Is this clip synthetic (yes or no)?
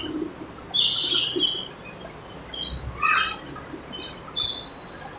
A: no